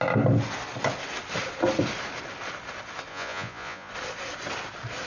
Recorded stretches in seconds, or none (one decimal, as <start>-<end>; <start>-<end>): 0.0-3.1; 3.9-5.1